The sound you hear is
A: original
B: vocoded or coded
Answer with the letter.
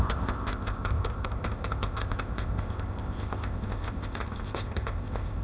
B